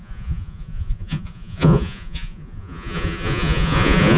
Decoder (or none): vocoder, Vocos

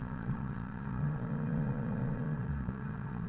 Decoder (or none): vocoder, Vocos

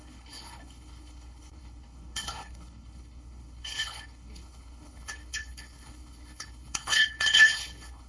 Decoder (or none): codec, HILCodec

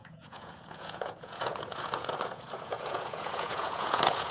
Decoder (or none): vocoder, Vocos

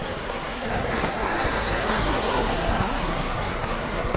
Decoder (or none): codec, SNAC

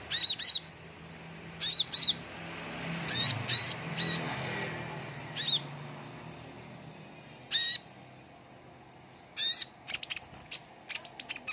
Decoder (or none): none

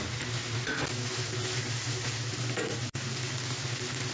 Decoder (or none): none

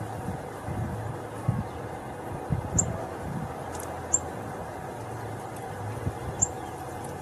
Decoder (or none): none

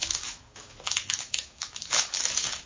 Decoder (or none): autoencoder, DAC-VAE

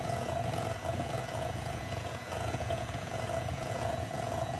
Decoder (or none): vocoder, Vocos